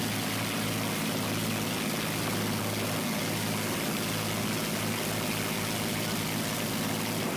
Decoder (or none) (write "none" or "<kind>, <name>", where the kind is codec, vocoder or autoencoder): none